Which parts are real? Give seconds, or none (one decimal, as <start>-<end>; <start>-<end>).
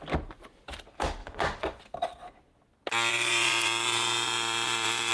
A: 0.0-1.2; 1.8-3.1